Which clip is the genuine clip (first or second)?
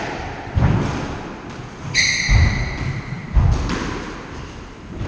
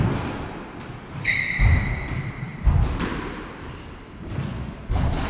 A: first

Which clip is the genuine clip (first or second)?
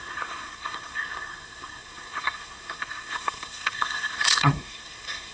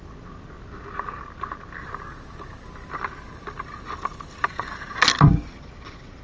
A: second